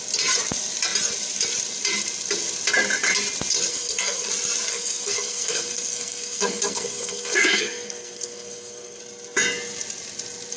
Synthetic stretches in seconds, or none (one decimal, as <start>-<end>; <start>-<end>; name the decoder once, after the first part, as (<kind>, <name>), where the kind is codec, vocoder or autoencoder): 3.7-4.3 (codec, SNAC); 4.7-9.0